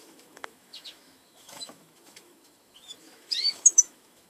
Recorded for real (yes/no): no